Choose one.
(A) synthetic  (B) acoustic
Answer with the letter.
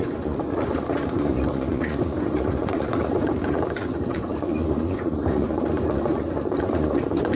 A